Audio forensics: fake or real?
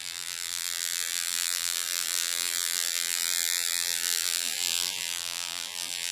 fake